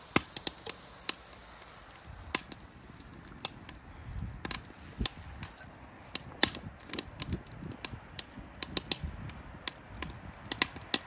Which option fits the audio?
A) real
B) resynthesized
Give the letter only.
A